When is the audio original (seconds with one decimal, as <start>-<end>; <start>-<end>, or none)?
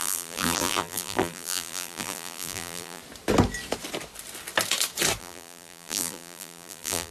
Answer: 3.0-5.2